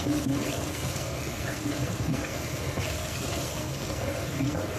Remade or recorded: remade